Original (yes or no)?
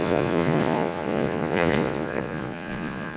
no